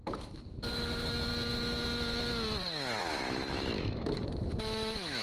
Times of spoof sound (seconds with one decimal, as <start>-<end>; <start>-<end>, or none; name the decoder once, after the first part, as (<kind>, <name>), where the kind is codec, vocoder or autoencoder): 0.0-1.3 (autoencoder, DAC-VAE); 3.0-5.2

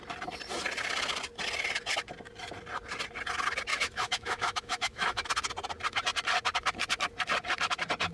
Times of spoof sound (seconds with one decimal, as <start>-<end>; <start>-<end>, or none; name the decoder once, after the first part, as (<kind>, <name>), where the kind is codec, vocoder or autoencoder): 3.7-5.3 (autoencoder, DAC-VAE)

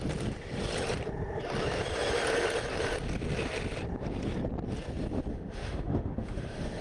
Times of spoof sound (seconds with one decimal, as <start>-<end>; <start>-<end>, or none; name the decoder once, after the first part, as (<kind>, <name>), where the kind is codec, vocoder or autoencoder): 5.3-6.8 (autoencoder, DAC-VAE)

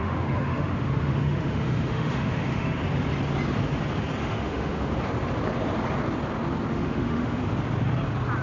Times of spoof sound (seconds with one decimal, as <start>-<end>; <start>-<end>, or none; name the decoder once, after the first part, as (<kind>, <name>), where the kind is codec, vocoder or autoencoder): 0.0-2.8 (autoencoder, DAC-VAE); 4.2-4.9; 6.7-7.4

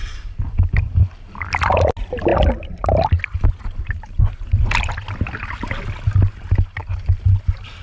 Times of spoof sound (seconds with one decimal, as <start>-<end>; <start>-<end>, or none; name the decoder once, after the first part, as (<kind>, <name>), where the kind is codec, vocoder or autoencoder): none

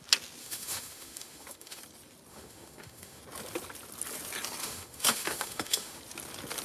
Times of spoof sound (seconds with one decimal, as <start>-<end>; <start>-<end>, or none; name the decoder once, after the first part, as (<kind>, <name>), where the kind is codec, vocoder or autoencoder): 0.4-1.8 (autoencoder, DAC-VAE); 2.3-3.2; 4.6-6.0

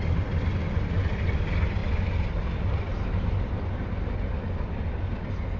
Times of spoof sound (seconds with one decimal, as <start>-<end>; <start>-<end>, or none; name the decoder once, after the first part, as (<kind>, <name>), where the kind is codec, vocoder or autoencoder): none

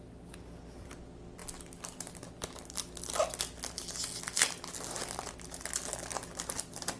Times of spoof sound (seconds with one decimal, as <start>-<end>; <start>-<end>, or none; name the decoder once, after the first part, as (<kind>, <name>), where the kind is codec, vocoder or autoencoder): none